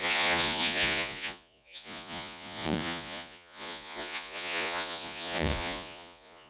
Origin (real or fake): fake